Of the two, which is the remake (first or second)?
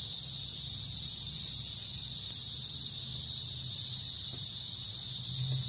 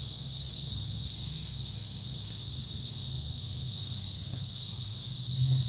second